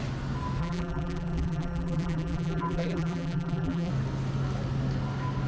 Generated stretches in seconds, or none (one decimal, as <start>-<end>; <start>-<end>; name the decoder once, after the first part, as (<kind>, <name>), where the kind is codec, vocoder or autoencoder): 0.6-3.9 (vocoder, BigVGAN v2)